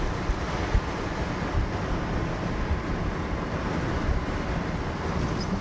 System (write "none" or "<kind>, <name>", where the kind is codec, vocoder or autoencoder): none